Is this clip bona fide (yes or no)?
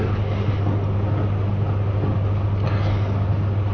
yes